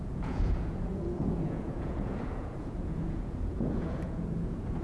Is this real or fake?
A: fake